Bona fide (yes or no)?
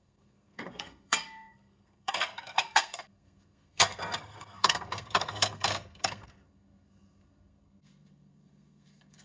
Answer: no